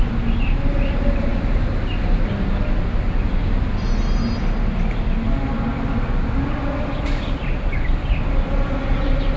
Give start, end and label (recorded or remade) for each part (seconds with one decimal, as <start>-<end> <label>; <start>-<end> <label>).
0.0-9.4 recorded